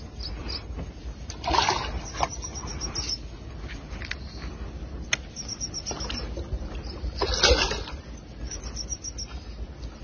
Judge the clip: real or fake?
real